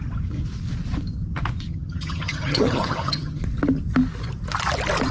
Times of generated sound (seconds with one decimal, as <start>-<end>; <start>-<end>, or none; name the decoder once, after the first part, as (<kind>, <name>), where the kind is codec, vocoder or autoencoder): 1.7-3.4 (vocoder, HiFi-GAN)